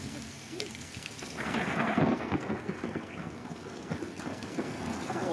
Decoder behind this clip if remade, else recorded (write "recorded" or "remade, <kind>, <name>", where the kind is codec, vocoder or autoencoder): remade, codec, SNAC